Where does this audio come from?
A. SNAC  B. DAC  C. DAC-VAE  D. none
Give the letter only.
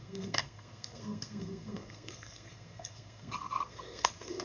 A